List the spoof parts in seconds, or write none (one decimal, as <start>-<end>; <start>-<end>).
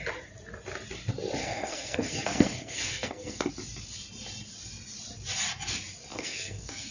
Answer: 1.4-3.5; 6.1-6.9